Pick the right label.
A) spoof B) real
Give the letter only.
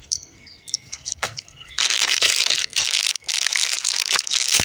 A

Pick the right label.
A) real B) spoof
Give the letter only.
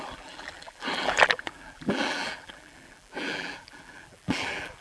B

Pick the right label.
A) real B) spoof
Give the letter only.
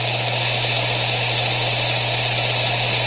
A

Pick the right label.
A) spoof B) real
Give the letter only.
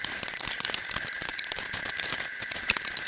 A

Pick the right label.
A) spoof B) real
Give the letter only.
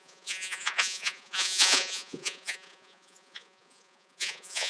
A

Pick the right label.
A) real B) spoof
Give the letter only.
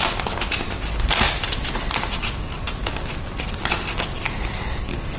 A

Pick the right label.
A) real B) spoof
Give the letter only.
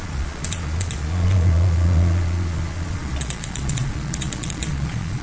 B